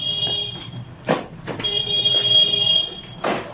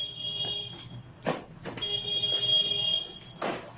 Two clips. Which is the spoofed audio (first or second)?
first